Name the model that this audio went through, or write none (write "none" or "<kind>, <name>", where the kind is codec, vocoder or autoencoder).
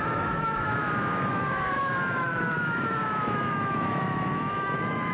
autoencoder, DAC-VAE